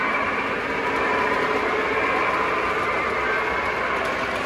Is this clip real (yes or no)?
yes